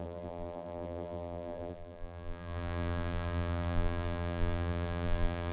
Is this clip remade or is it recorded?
remade